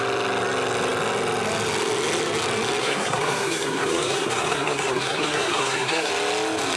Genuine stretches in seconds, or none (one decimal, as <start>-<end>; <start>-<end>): 0.0-2.8; 6.1-6.8